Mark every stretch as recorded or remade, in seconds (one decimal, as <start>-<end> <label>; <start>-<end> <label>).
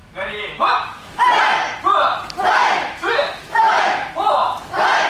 0.0-1.2 remade; 1.2-2.6 recorded; 2.6-4.1 remade; 4.1-5.1 recorded